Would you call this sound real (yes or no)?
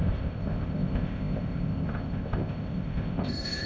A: no